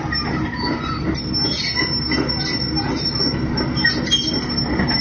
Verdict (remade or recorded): recorded